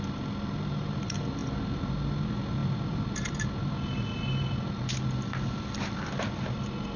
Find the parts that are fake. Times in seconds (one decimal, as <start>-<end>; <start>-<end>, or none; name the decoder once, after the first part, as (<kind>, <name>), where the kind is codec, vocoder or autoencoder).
none